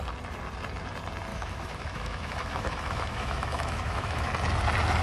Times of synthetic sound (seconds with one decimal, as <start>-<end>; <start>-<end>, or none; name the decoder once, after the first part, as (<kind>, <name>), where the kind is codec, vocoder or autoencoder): 1.3-4.3 (autoencoder, DAC-VAE)